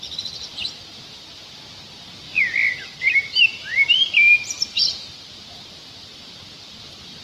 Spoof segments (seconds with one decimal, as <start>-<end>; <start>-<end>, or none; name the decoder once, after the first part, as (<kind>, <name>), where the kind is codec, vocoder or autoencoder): none